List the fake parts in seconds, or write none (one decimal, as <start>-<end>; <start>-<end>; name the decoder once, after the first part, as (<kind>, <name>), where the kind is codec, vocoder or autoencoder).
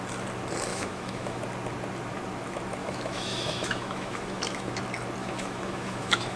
0.7-1.4 (autoencoder, DAC-VAE); 2.8-4.8; 5.2-6.4